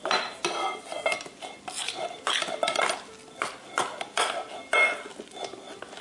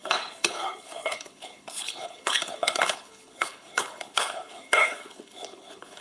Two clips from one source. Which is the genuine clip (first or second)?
first